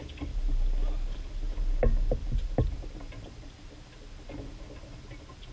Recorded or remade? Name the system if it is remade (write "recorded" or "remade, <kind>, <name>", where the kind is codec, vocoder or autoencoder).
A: recorded